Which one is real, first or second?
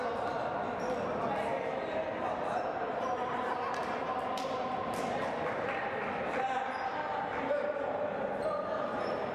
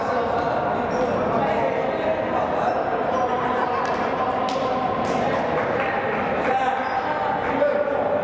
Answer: second